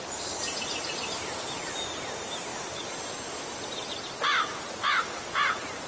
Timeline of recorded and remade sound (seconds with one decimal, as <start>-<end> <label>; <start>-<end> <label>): 0.0-5.9 recorded